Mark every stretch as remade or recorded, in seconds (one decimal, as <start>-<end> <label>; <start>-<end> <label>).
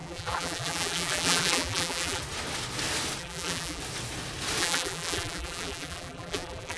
0.0-2.2 remade; 2.2-3.2 recorded; 3.2-3.8 remade; 3.8-4.6 recorded; 4.6-6.8 remade